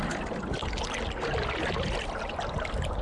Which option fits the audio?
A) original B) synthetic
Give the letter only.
A